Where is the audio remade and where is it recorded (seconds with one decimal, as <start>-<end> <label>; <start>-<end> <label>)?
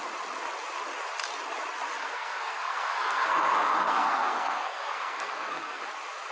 0.0-2.0 recorded; 2.0-5.8 remade; 5.8-6.3 recorded